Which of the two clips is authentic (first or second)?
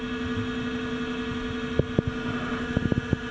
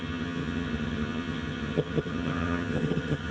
first